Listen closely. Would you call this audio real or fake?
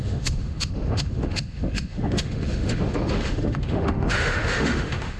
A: fake